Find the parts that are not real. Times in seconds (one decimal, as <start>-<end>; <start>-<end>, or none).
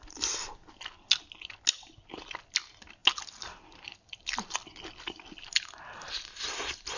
none